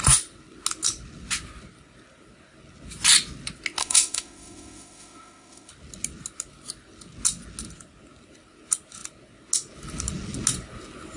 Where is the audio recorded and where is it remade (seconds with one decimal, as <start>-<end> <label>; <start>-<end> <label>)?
0.0-3.8 recorded; 3.8-5.7 remade; 5.7-11.2 recorded

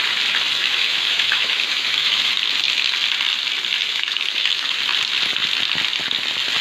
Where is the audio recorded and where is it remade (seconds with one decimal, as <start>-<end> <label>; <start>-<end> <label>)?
0.0-0.6 recorded; 0.6-2.2 remade; 2.2-3.9 recorded; 3.9-4.8 remade; 4.8-6.6 recorded

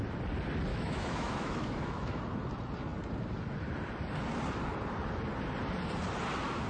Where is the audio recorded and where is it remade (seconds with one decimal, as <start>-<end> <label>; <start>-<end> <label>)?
0.0-0.7 recorded; 0.7-2.2 remade; 2.2-6.7 recorded

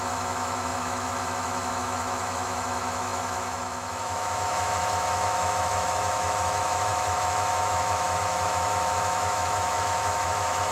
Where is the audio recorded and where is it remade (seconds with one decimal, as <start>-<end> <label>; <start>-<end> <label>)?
0.0-10.7 remade

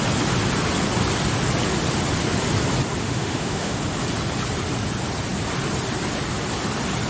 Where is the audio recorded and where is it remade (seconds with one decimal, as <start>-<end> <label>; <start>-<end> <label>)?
0.0-3.0 recorded; 3.0-3.8 remade; 3.8-7.1 recorded

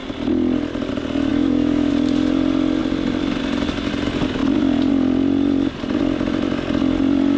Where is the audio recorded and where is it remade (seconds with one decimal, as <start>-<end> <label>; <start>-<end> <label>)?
0.0-1.3 recorded; 1.3-1.9 remade; 1.9-7.4 recorded

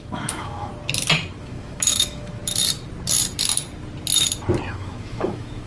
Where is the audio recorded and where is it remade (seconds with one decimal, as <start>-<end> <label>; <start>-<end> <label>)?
0.0-0.7 remade; 0.7-1.4 recorded; 1.4-2.4 remade; 2.4-4.7 recorded; 4.7-5.7 remade